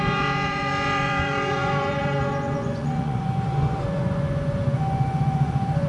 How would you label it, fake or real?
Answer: fake